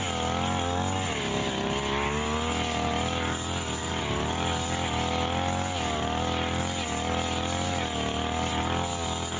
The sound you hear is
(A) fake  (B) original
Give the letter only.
B